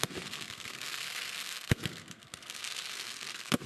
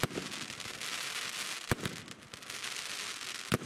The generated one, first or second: first